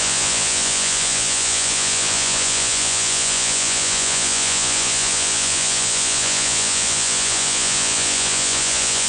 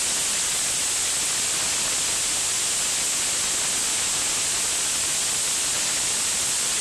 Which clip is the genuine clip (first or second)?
second